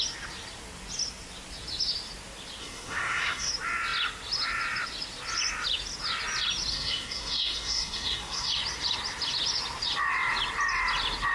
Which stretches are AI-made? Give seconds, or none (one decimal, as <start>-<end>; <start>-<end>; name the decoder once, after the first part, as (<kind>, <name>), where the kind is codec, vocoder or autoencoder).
2.6-3.5 (codec, SNAC); 6.7-8.5